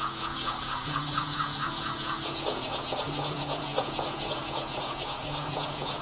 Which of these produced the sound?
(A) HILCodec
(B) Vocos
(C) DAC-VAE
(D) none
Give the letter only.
B